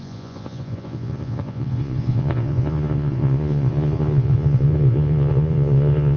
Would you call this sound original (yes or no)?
no